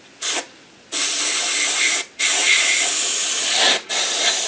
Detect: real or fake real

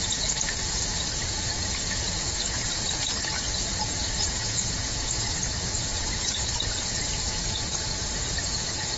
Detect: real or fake fake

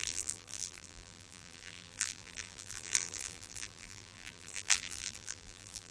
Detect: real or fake fake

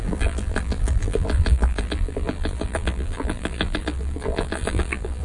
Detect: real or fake fake